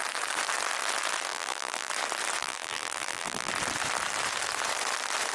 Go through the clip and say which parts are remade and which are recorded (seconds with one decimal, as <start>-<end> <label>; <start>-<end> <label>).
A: 0.0-1.3 recorded; 1.3-1.9 remade; 1.9-2.4 recorded; 2.4-3.5 remade; 3.5-5.3 recorded